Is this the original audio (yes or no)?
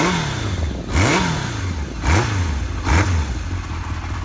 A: yes